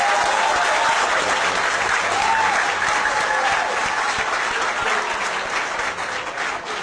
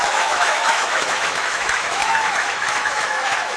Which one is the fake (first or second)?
second